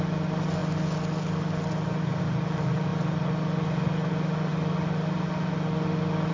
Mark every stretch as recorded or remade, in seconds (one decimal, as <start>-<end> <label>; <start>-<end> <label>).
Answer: 0.0-6.3 recorded